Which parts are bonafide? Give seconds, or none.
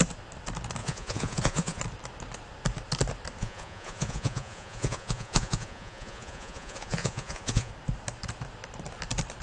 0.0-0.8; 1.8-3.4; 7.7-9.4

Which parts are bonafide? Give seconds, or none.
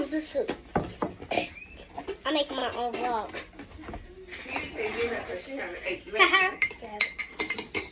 0.0-7.9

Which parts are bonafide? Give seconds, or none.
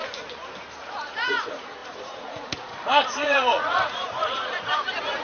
0.0-0.8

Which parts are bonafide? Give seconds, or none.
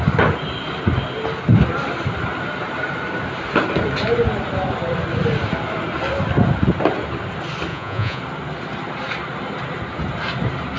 0.0-7.7; 8.2-10.8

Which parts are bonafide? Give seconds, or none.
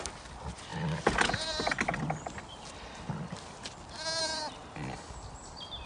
0.0-5.9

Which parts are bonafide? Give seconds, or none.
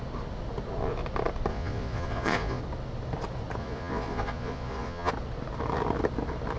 0.0-1.5; 2.6-3.6; 5.1-6.6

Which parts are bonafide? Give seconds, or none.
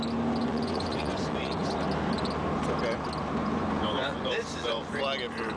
0.0-0.4; 1.7-3.4; 5.0-5.6